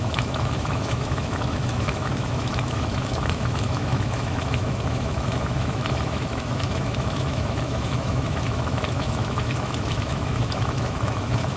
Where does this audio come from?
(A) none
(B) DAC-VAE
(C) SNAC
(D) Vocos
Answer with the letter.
B